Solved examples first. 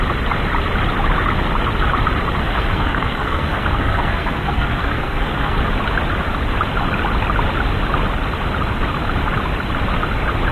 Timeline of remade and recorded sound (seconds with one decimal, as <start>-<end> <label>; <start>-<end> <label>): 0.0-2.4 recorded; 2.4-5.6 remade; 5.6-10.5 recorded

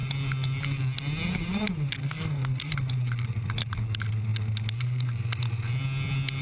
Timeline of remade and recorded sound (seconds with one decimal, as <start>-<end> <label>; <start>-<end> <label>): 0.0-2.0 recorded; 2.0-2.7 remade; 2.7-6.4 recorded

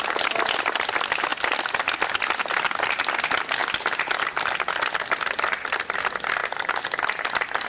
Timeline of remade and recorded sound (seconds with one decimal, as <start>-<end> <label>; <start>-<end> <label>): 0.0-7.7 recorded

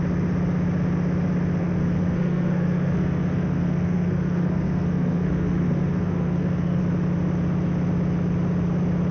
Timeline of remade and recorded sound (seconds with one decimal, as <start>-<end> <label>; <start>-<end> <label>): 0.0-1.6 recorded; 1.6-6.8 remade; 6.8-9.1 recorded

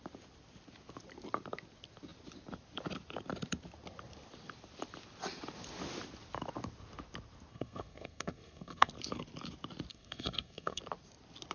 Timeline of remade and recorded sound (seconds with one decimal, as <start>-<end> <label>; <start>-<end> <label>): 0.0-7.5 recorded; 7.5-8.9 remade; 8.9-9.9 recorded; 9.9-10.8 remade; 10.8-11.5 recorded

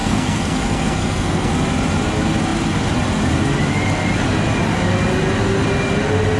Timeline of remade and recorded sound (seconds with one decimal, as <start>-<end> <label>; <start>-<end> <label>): 0.0-1.5 remade; 1.5-6.4 recorded

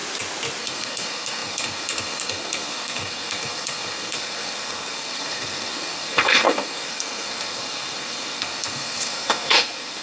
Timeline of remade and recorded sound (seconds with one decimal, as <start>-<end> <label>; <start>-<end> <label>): 0.0-0.6 recorded; 0.6-10.0 remade